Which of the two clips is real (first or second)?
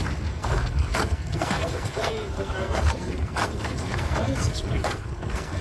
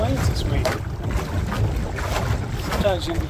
second